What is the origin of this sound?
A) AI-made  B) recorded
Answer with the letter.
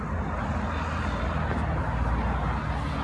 B